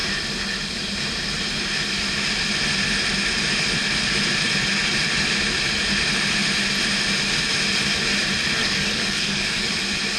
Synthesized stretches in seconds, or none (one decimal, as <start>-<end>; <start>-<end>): 8.6-9.7